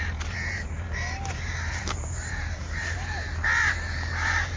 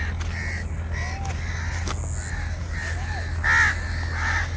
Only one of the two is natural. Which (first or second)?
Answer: second